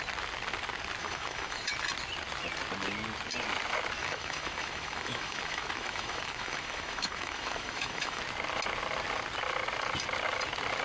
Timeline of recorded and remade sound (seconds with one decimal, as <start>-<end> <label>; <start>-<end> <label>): 0.0-1.0 recorded; 1.0-1.7 remade; 1.7-4.0 recorded; 4.0-8.2 remade; 8.2-10.8 recorded